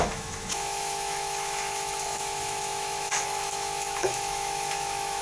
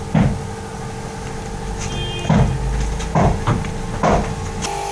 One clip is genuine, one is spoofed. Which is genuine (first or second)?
second